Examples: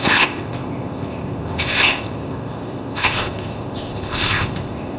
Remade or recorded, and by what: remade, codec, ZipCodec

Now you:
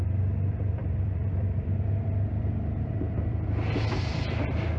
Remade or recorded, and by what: remade, vocoder, BigVGAN v2